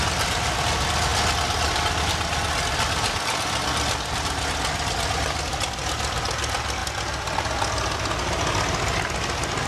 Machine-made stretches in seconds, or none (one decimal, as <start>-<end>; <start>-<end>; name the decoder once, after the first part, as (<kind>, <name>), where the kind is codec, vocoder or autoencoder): none